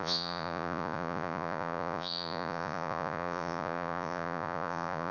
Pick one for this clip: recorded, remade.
remade